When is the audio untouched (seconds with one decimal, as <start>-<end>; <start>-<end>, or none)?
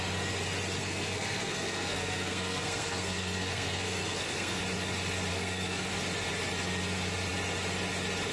0.0-0.8; 4.6-5.3; 5.9-8.3